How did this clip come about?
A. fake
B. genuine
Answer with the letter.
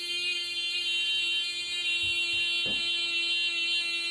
B